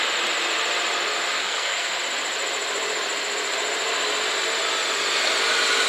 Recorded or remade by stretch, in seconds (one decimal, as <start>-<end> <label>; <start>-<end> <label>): 0.0-1.4 recorded; 1.4-2.0 remade; 2.0-5.9 recorded